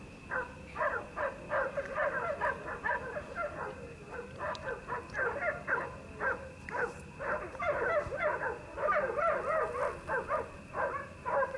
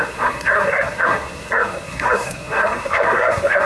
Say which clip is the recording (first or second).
first